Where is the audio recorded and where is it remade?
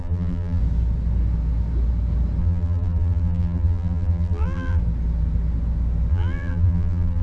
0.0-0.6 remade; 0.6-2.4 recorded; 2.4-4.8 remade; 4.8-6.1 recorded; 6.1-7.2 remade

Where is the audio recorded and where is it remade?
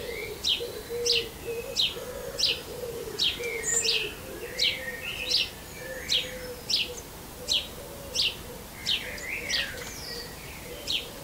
0.0-2.6 recorded; 2.6-4.1 remade; 4.1-8.8 recorded; 8.8-11.2 remade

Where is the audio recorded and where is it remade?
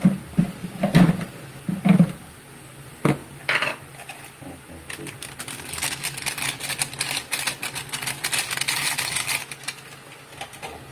0.0-0.6 recorded; 0.6-1.3 remade; 1.3-10.9 recorded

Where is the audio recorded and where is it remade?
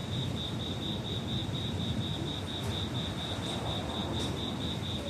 0.0-0.8 remade; 0.8-1.4 recorded; 1.4-2.4 remade; 2.4-5.1 recorded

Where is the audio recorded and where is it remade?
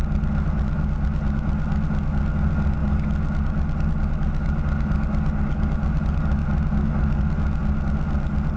0.0-8.6 recorded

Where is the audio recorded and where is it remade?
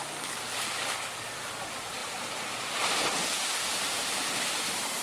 0.0-2.0 recorded; 2.0-5.0 remade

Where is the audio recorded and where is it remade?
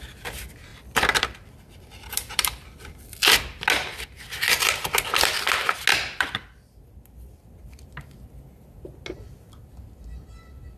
0.0-0.7 recorded; 0.7-2.9 remade; 2.9-5.9 recorded; 5.9-6.8 remade; 6.8-10.8 recorded